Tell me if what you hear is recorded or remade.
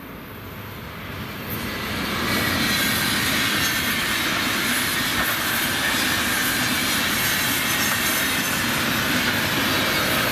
recorded